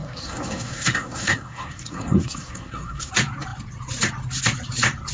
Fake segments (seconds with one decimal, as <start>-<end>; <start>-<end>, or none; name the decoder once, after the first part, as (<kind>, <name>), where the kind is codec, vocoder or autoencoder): 0.0-3.1 (codec, SNAC)